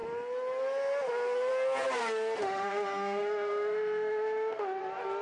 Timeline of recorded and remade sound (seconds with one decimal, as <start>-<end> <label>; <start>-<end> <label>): 0.0-2.4 recorded; 2.4-4.8 remade; 4.8-5.2 recorded